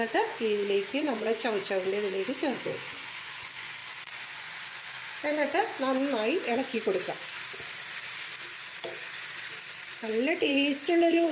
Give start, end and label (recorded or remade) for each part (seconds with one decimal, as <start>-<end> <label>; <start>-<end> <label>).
0.0-5.6 remade; 5.6-10.5 recorded; 10.5-11.3 remade